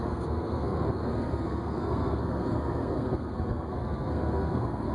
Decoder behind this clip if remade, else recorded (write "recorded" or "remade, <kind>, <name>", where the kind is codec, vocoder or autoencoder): remade, codec, SNAC